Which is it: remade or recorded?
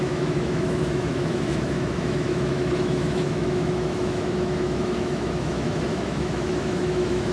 remade